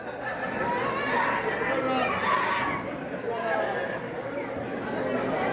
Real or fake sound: real